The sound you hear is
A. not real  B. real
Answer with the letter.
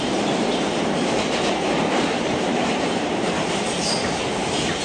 A